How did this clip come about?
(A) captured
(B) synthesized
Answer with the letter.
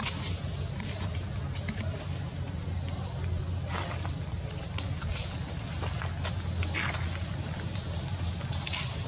A